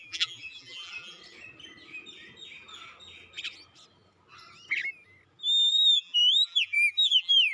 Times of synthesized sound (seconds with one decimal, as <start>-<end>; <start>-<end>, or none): 0.0-1.2; 5.7-7.5